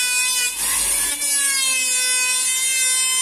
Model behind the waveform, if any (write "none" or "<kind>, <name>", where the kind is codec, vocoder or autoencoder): none